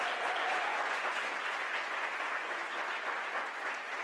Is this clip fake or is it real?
fake